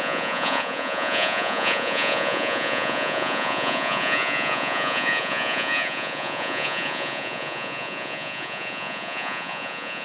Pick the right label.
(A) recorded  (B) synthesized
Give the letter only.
B